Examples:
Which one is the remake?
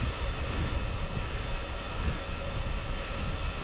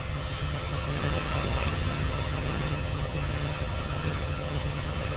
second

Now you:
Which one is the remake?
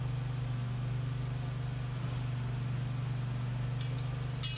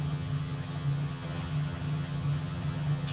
second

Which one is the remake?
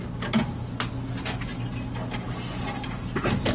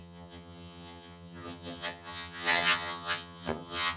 second